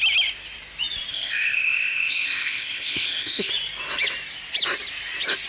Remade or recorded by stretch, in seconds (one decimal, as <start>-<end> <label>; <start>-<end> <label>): 0.0-1.1 recorded; 1.1-3.5 remade; 3.5-5.5 recorded